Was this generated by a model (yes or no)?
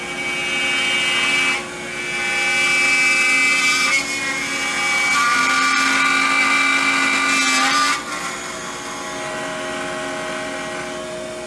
no